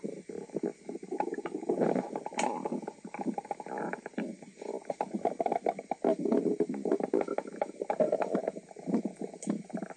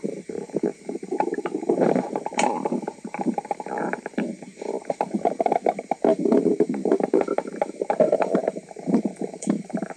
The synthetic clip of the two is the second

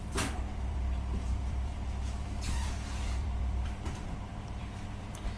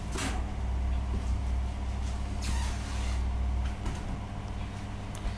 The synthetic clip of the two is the first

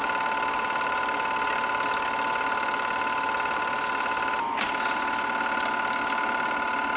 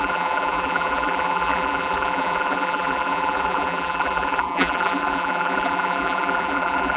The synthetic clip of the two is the second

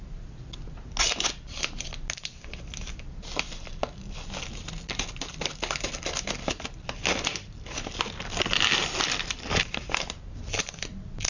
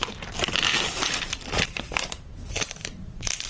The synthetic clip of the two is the second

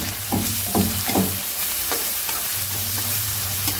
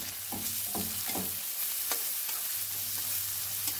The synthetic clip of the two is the first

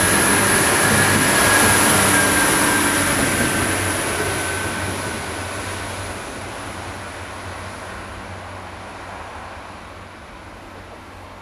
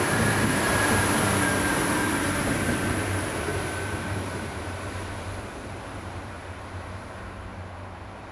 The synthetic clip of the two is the second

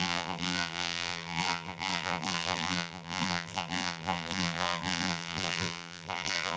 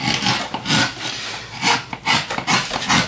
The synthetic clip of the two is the first